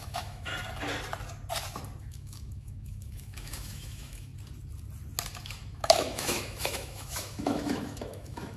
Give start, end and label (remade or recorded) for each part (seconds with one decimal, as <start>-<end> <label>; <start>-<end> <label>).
0.0-0.5 remade; 0.5-2.0 recorded; 2.0-4.3 remade; 4.3-5.4 recorded; 5.4-8.6 remade